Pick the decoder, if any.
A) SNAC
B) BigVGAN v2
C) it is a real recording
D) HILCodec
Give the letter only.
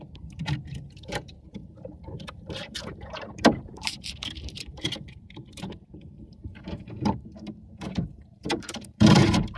B